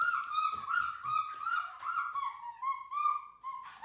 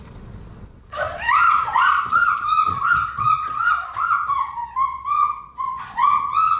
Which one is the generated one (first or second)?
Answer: second